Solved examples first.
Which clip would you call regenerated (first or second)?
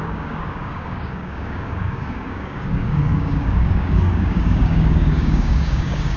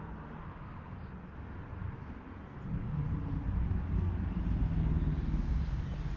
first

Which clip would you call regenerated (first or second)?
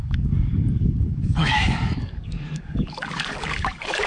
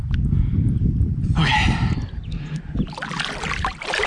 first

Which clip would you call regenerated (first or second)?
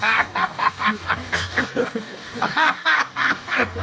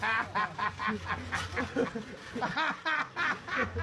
first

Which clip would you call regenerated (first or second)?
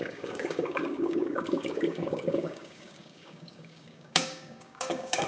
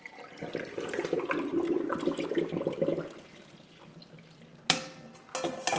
first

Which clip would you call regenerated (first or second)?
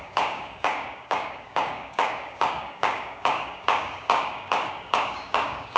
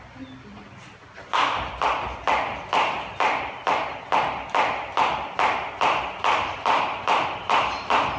first